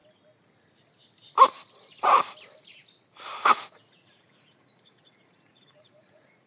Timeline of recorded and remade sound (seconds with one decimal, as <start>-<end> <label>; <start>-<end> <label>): 0.0-3.8 recorded; 3.8-6.5 remade